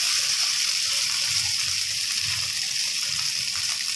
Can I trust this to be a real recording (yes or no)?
no